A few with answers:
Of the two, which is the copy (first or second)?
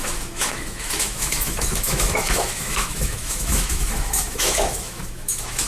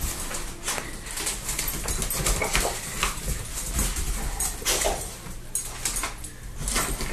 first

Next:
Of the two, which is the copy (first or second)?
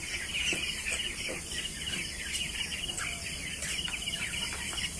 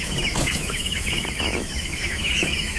second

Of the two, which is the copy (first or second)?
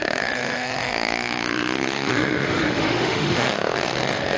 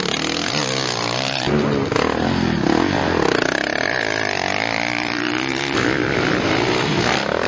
first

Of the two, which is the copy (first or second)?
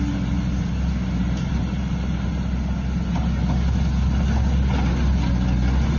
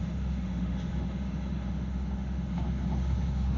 second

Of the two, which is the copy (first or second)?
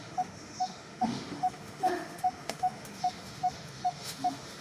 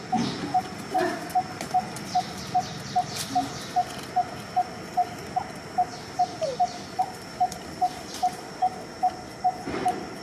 first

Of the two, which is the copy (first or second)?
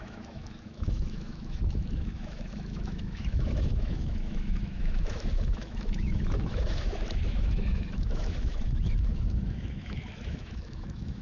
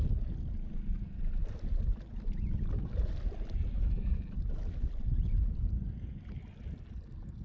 first